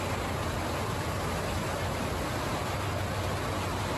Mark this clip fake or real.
real